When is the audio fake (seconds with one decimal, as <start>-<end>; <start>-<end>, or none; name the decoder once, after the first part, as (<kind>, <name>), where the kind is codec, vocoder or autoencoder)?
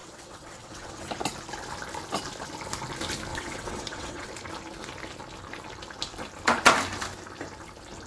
0.0-1.1 (vocoder, WaveNeXt); 3.3-4.3